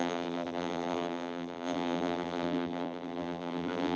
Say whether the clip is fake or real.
fake